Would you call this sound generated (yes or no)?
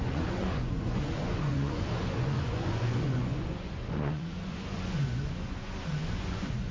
yes